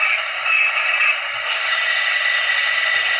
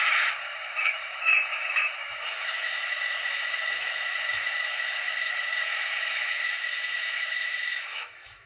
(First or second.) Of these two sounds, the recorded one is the first